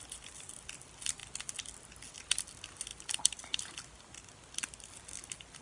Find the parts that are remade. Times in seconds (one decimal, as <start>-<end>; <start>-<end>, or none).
none